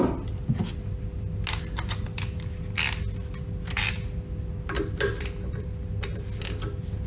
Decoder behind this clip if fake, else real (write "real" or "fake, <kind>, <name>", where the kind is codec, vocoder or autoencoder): real